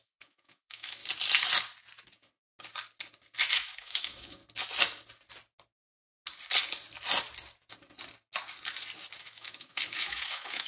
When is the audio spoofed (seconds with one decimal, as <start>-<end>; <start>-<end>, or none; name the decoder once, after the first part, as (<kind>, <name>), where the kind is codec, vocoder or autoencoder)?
0.0-1.0 (autoencoder, DAC-VAE); 3.5-4.4; 9.2-10.7